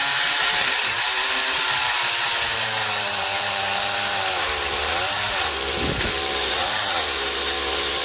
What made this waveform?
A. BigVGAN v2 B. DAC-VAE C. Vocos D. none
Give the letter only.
A